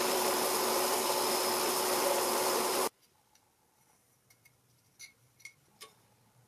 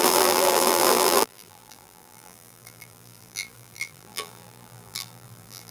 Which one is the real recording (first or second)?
first